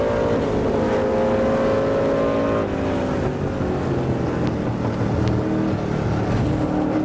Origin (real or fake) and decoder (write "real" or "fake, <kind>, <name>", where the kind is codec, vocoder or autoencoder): real